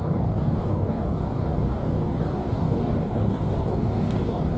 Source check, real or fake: fake